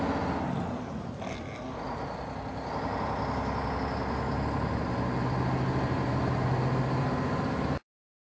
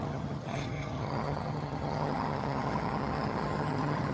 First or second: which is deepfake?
second